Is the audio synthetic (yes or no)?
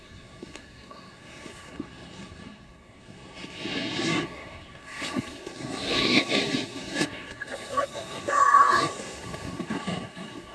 yes